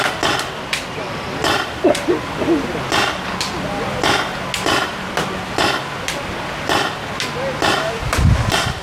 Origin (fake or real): real